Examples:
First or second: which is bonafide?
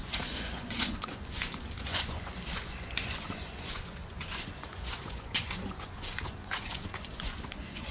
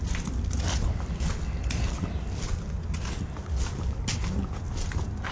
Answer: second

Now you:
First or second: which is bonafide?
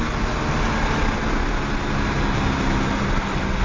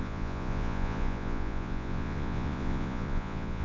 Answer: first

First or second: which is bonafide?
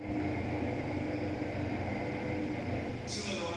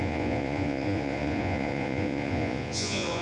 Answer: first